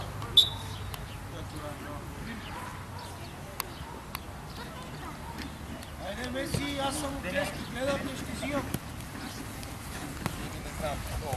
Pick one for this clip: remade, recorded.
recorded